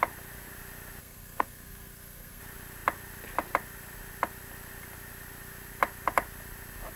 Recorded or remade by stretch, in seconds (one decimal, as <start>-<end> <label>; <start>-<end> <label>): 0.0-1.0 recorded; 1.0-2.4 remade; 2.4-7.0 recorded